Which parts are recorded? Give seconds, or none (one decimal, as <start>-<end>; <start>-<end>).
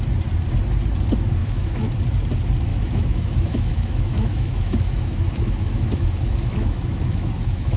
0.0-1.4; 1.9-2.7